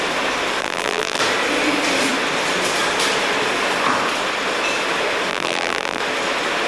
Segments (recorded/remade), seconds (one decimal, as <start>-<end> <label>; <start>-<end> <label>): 0.0-0.6 recorded; 0.6-1.2 remade; 1.2-5.3 recorded; 5.3-6.0 remade; 6.0-6.7 recorded